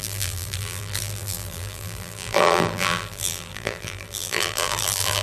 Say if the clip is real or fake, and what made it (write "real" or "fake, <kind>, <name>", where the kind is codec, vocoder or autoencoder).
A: fake, vocoder, BigVGAN v2